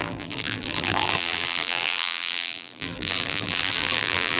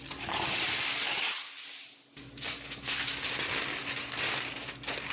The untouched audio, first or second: second